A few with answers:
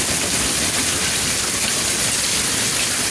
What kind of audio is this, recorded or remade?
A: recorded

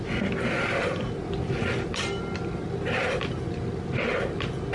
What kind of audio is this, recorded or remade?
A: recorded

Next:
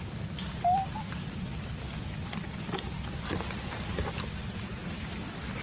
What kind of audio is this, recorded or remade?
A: recorded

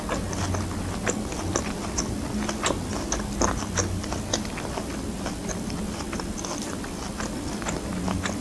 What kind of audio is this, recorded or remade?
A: recorded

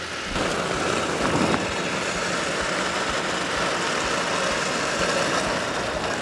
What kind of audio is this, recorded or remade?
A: recorded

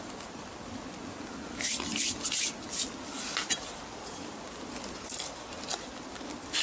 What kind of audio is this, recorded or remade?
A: recorded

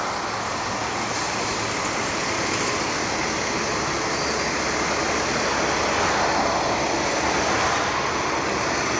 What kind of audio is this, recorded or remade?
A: recorded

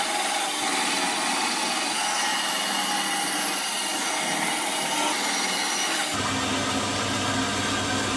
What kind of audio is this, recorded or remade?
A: recorded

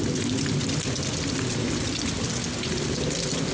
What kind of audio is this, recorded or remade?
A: recorded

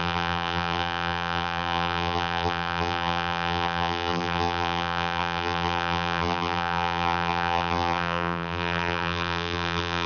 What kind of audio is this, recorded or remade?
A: remade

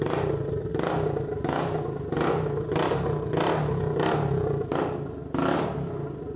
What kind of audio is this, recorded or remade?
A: recorded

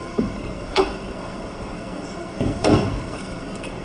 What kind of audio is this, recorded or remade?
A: remade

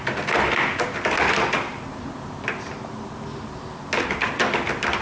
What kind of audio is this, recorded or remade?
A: recorded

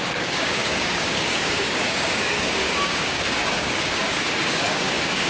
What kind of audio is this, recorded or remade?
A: remade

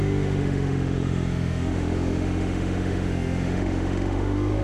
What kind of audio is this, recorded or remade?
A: remade